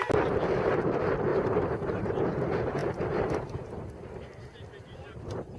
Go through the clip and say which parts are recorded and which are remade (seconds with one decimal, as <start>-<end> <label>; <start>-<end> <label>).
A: 0.0-1.3 recorded; 1.3-2.1 remade; 2.1-2.8 recorded; 2.8-4.4 remade; 4.4-5.6 recorded